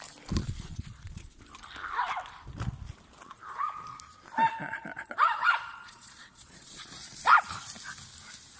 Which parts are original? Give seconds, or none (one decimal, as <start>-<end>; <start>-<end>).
0.0-0.4; 1.4-4.6; 7.2-8.6